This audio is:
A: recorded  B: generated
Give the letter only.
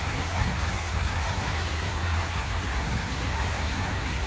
B